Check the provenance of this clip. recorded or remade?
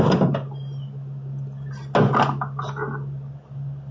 recorded